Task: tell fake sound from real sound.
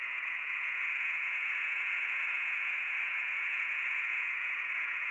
fake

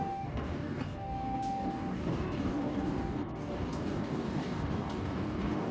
fake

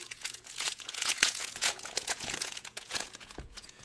fake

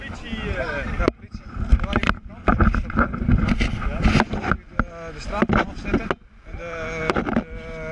real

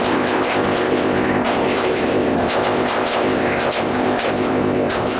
fake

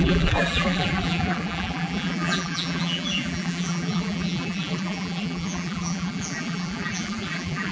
fake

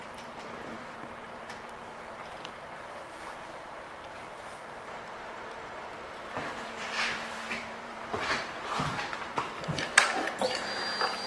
fake